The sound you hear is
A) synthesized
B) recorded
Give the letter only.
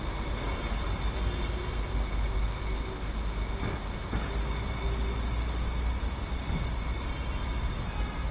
B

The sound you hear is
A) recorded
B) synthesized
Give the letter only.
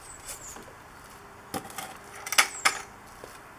A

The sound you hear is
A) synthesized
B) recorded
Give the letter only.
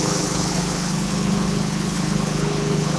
A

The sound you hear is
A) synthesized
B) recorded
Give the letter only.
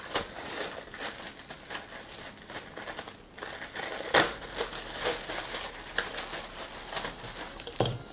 B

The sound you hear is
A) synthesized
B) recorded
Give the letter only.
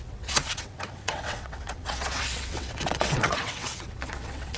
A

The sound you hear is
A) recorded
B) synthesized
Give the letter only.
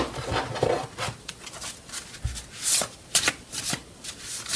A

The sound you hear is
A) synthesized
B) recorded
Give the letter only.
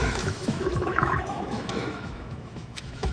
A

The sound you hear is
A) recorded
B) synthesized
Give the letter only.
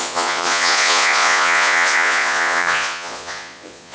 B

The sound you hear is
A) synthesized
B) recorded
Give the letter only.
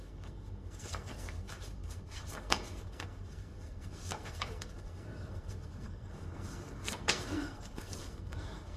A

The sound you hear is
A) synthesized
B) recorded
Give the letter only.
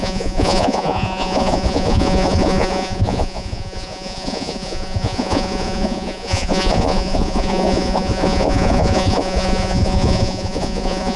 A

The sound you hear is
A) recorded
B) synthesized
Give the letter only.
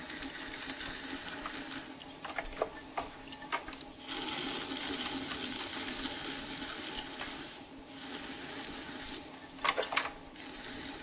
A